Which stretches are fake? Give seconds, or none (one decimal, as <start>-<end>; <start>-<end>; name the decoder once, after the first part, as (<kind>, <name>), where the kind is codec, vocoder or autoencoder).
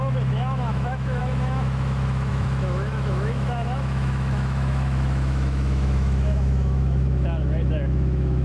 0.0-8.4 (autoencoder, DAC-VAE)